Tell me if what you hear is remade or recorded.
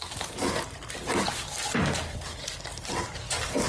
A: recorded